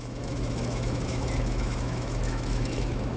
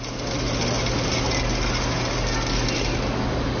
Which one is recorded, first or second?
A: second